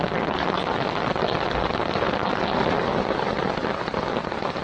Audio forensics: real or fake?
real